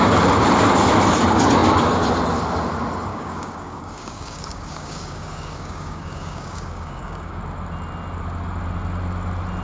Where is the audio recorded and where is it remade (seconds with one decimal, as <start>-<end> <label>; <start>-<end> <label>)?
0.0-3.1 recorded; 3.1-7.4 remade; 7.4-9.6 recorded